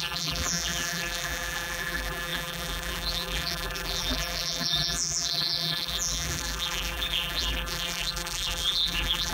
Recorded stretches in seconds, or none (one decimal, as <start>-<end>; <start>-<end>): none